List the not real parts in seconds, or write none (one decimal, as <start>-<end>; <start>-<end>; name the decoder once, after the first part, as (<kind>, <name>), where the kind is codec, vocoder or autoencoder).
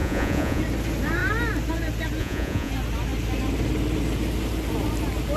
0.0-0.6 (vocoder, Vocos); 2.2-2.7